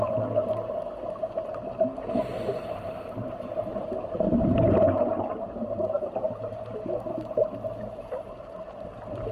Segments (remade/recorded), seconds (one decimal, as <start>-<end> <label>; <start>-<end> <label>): 0.0-2.3 recorded; 2.3-6.5 remade; 6.5-9.3 recorded